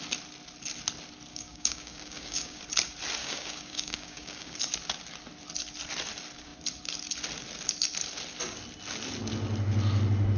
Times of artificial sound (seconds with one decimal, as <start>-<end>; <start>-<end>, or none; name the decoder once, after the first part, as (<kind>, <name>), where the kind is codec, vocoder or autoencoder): 1.3-2.6 (codec, DAC); 3.2-4.6